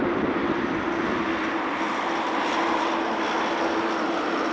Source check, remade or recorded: recorded